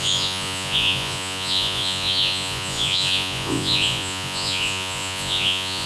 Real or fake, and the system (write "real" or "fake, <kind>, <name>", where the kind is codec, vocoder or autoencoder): fake, vocoder, Vocos